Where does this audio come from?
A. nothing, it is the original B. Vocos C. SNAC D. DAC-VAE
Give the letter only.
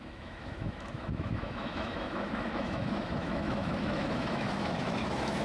D